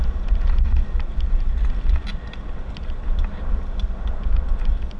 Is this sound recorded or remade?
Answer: recorded